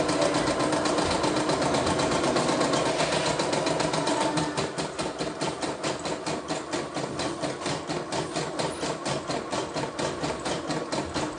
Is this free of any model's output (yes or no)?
yes